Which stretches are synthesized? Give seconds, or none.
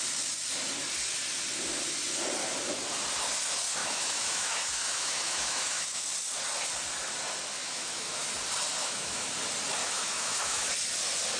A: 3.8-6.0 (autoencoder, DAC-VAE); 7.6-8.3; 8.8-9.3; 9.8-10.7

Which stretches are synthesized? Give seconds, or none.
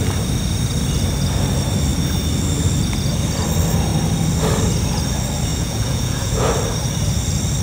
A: 5.5-6.5 (vocoder, Vocos)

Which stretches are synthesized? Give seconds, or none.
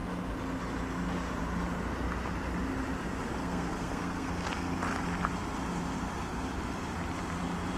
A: 3.4-4.3 (codec, SNAC)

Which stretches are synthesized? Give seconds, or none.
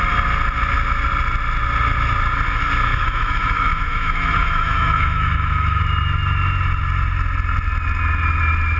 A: 2.9-5.8 (autoencoder, DAC-VAE)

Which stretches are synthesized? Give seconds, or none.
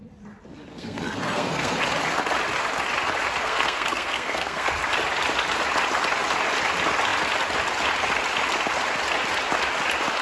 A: 0.7-1.8 (codec, SNAC); 3.4-4.7